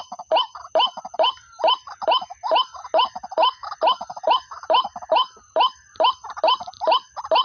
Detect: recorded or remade recorded